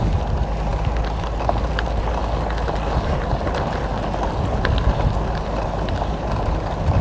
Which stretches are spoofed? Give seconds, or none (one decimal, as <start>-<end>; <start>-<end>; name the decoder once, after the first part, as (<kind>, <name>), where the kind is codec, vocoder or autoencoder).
none